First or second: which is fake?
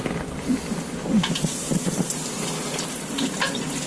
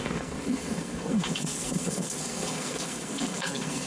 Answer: second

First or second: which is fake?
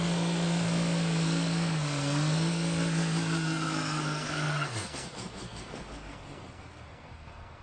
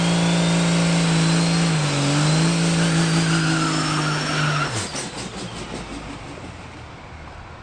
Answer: first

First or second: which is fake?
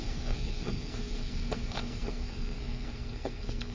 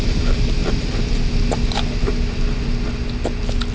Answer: first